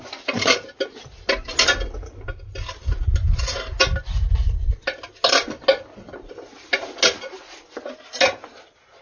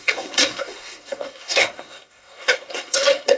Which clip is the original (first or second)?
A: first